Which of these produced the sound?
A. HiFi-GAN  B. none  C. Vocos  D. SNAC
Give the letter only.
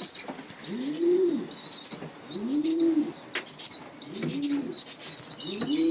B